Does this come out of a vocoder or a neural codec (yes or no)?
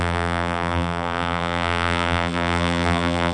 yes